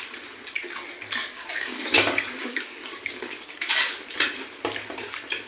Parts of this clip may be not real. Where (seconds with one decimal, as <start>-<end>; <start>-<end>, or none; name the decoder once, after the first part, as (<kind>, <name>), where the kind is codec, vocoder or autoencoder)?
1.2-3.7 (codec, DAC)